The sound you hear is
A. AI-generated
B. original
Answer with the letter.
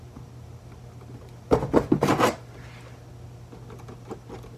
B